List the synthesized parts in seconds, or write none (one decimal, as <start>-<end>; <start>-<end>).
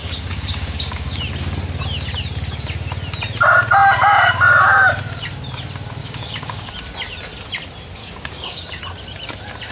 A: 0.0-1.2; 6.0-6.7; 8.0-8.8